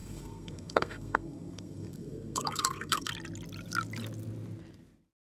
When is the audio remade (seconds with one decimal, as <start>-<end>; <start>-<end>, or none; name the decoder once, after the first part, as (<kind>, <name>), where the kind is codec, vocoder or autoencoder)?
0.0-3.1 (codec, SNAC)